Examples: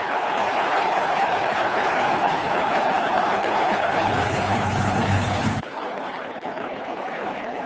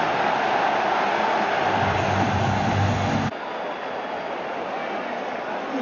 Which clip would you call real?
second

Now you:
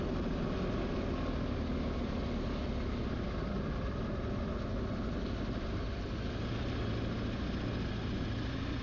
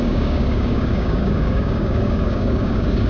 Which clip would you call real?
first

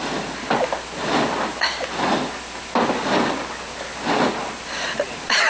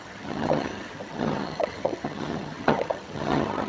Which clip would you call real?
first